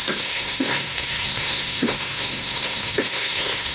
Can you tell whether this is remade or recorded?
remade